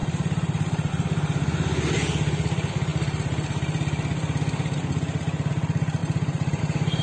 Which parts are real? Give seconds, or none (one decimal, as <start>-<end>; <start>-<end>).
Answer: 0.9-6.0; 6.6-7.0